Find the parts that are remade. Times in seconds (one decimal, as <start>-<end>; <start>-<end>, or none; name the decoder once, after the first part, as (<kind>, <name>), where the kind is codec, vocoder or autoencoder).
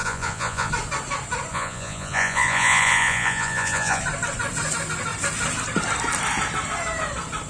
0.0-0.7 (vocoder, Vocos); 1.5-4.0